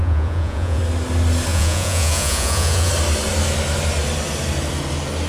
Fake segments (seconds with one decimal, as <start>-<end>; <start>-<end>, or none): 0.0-0.8; 1.5-2.9